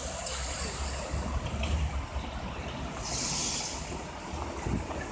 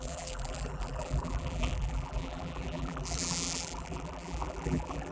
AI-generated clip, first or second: second